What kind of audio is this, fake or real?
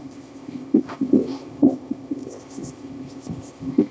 fake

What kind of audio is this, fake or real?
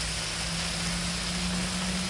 real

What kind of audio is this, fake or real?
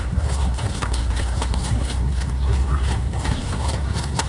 fake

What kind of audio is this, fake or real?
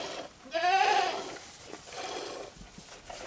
real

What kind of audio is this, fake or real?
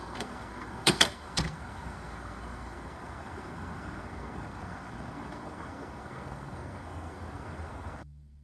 fake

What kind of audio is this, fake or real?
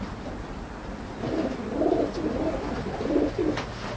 real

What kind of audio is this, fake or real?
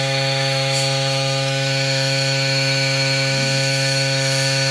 fake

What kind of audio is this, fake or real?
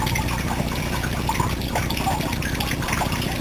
real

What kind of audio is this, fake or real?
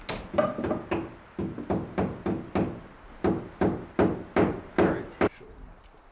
real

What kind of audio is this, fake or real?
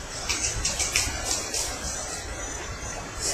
real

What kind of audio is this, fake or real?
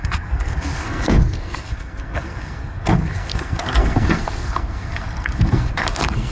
fake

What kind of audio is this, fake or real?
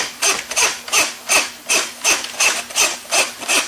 real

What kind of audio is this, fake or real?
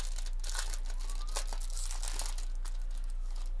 real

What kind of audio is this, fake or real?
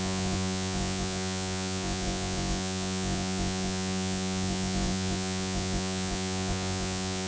fake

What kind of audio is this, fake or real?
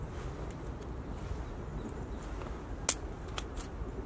real